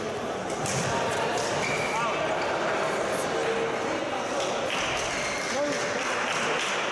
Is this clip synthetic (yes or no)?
no